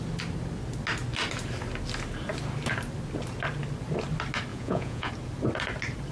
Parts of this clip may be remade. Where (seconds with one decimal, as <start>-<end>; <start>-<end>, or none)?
4.5-5.1